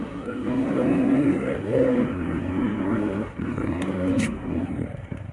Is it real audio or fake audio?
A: fake